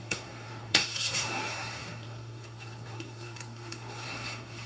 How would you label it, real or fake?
fake